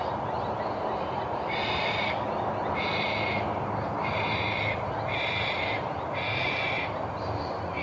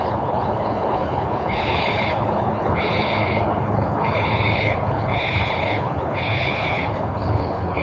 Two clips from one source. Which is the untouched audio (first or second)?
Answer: first